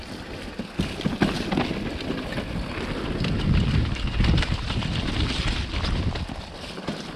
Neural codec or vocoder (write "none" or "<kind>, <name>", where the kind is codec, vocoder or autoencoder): none